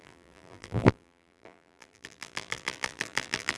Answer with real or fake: fake